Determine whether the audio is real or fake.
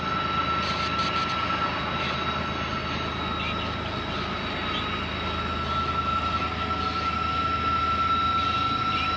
real